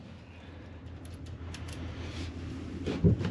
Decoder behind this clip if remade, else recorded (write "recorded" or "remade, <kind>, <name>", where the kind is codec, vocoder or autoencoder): recorded